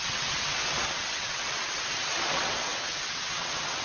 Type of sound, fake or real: fake